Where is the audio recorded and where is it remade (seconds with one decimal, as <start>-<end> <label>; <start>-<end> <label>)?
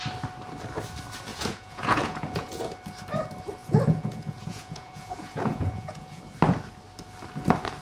0.0-1.3 recorded; 1.3-2.6 remade; 2.6-3.6 recorded; 3.6-6.2 remade; 6.2-7.8 recorded